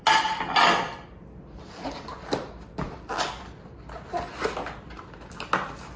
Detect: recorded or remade recorded